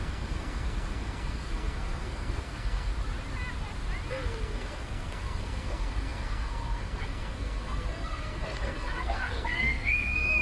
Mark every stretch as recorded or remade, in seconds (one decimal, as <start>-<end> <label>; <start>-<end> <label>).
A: 0.0-2.9 remade; 2.9-4.1 recorded; 4.1-10.4 remade